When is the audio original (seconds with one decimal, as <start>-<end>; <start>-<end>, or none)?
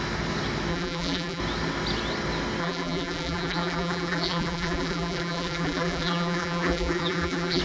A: 0.0-0.7; 1.4-2.6